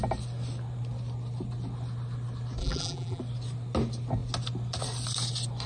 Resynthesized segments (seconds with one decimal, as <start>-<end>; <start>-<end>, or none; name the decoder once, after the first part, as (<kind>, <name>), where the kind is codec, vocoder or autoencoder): 2.6-3.2 (vocoder, BigVGAN v2)